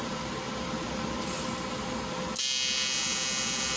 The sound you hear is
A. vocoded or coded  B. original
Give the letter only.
B